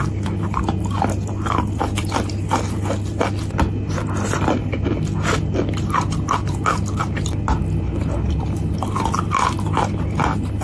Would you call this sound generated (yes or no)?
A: no